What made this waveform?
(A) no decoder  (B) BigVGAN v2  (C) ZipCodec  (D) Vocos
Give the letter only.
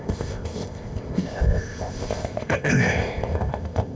C